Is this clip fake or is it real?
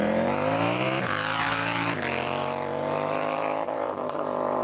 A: fake